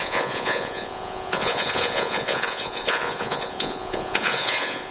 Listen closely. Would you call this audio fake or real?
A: fake